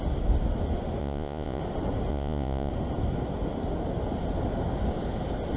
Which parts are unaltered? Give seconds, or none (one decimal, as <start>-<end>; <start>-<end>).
0.0-1.0; 1.6-2.1; 2.7-5.6